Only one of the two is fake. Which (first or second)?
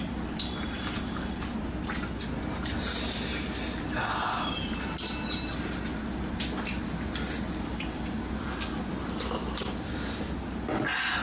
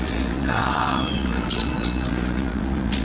second